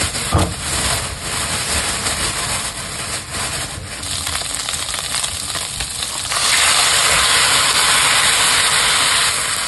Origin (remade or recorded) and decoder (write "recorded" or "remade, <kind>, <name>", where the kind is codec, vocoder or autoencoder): recorded